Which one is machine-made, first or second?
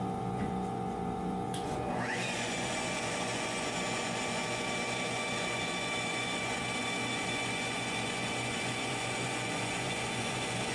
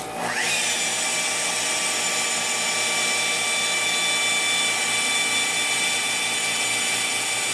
first